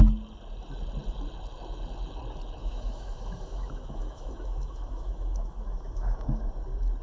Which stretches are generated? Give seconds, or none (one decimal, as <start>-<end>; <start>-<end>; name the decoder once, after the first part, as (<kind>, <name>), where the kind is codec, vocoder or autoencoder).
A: 2.6-6.4 (autoencoder, DAC-VAE)